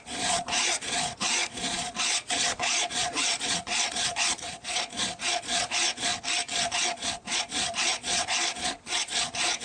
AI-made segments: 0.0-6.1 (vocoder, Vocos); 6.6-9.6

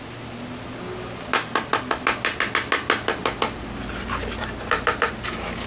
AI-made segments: none

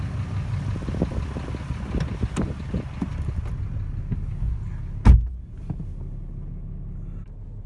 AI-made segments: none